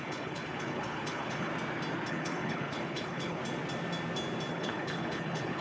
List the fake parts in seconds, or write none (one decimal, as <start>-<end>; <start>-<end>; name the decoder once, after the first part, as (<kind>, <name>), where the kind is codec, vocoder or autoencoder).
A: 0.0-1.5 (codec, HILCodec); 2.1-3.4; 4.5-5.6